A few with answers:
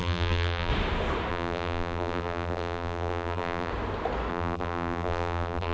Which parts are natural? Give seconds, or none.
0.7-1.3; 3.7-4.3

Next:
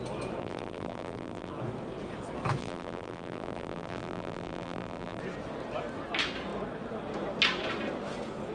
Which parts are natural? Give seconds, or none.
0.0-0.4; 1.5-2.6; 5.2-8.5

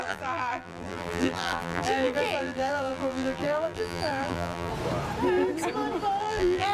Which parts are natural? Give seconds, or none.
4.7-6.2